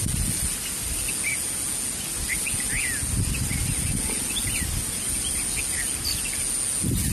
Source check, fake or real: real